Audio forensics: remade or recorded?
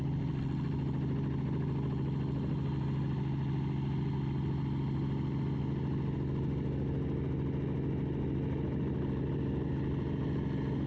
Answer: recorded